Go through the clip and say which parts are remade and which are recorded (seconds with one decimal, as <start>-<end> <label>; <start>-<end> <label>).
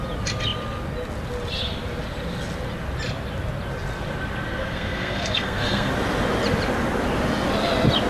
0.0-4.6 recorded; 4.6-5.9 remade; 5.9-8.1 recorded